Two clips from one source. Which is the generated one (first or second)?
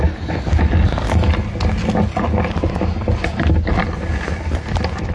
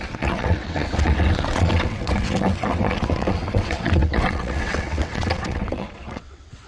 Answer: second